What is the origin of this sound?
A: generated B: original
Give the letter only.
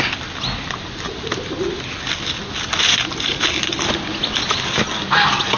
B